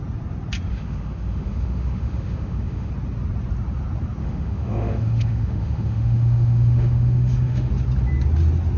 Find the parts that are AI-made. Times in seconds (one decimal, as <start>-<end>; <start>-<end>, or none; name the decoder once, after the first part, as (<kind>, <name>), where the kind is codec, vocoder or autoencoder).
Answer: 0.7-2.9 (autoencoder, DAC-VAE); 4.2-7.7